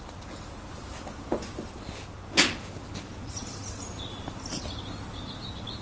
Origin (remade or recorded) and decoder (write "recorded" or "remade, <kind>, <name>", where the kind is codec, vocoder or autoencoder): recorded